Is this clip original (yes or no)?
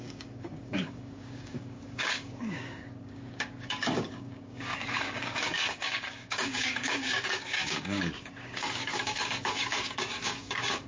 no